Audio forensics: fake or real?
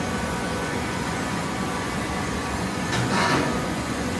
fake